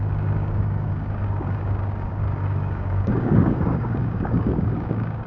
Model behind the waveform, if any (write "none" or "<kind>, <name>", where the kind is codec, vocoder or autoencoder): codec, DAC